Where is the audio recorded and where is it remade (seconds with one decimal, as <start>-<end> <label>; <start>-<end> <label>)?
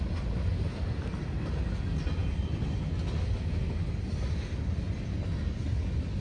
0.0-6.2 recorded